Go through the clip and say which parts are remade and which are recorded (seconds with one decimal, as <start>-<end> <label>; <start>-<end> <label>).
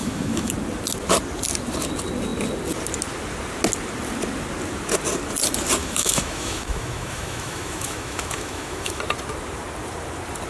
0.0-0.5 remade; 0.5-5.8 recorded; 5.8-9.0 remade; 9.0-10.5 recorded